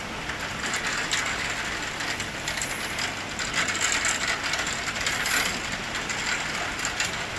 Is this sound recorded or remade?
recorded